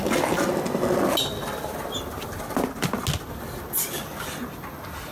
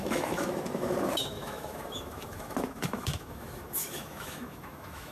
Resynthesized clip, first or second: second